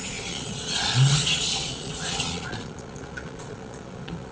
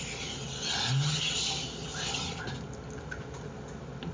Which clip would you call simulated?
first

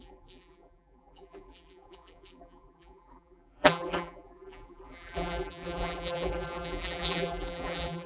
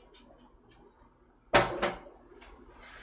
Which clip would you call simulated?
first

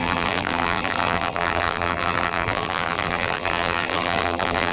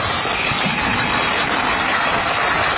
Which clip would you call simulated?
first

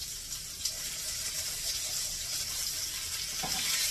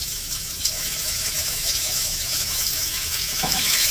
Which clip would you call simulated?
second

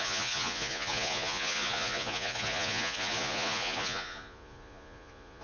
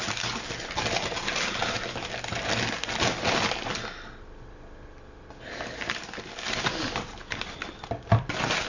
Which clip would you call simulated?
first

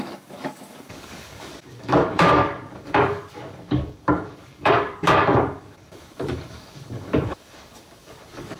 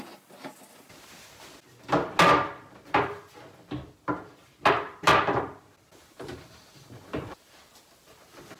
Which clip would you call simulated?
first